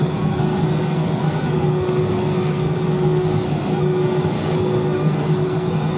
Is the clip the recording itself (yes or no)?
no